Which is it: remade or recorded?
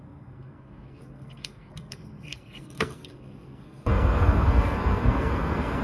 remade